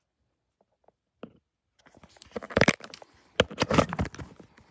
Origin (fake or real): real